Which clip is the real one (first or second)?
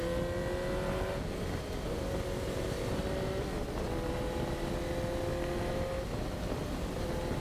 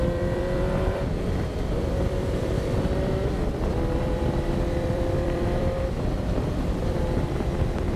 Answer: first